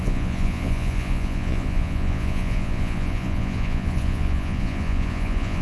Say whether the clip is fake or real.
fake